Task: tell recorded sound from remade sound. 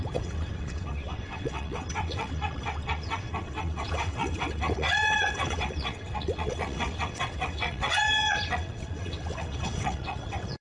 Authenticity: remade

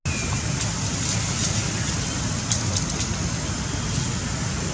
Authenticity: recorded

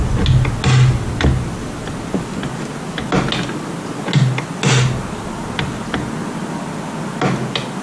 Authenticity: recorded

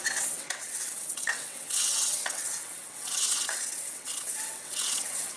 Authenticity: remade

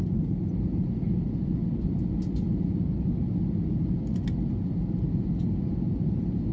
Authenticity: recorded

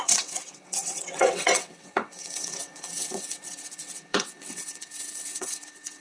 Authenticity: remade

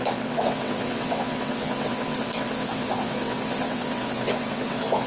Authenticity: remade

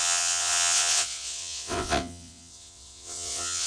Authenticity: remade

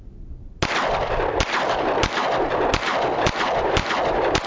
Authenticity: recorded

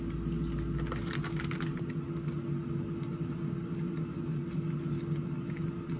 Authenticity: recorded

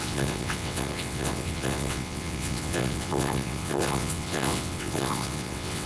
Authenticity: remade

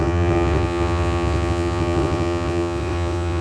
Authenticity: remade